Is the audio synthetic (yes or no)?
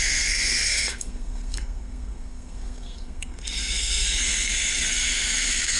yes